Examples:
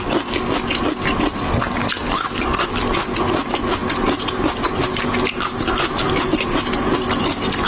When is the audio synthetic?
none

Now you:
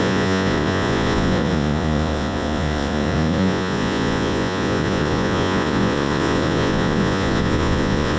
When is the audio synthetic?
0.0-8.2 (vocoder, Vocos)

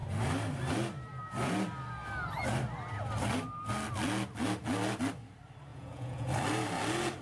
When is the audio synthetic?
5.7-6.3 (vocoder, Vocos)

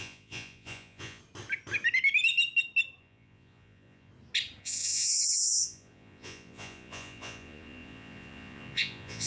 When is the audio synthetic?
0.0-1.2 (vocoder, Vocos); 3.0-4.1; 4.6-9.3

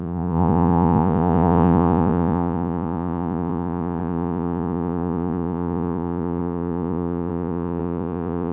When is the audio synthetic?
0.0-8.5 (vocoder, Vocos)